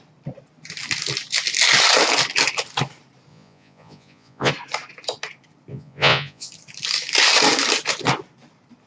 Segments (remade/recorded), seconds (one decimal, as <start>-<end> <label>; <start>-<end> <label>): 0.0-3.3 recorded; 3.3-4.5 remade; 4.5-5.7 recorded; 5.7-6.5 remade; 6.5-8.9 recorded